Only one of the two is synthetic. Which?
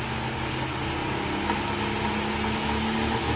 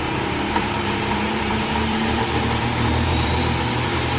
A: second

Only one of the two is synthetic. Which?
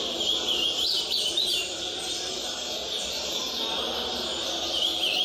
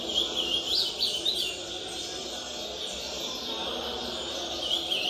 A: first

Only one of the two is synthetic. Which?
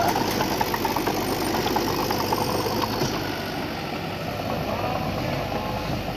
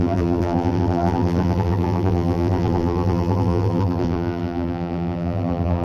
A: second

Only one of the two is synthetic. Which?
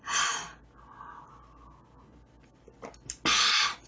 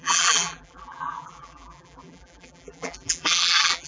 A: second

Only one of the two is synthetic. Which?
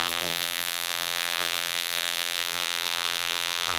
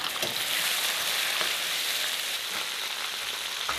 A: first